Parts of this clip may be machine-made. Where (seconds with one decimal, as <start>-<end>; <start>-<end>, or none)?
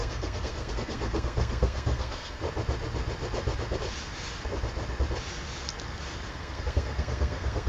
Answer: 0.0-2.4; 6.3-7.7